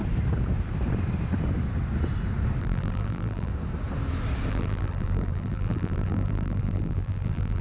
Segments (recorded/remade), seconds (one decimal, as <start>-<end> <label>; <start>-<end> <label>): 0.0-2.6 recorded; 2.6-3.5 remade; 3.5-4.5 recorded; 4.5-7.6 remade